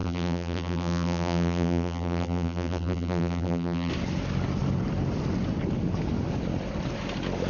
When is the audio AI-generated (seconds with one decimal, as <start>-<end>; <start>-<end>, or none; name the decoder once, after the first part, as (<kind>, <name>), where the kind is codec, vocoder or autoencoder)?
0.0-3.9 (vocoder, BigVGAN v2)